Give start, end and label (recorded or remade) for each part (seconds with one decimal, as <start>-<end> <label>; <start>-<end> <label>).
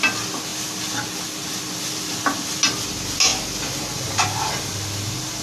0.0-5.4 recorded